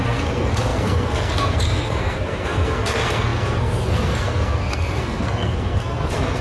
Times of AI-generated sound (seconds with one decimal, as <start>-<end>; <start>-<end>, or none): 0.0-6.4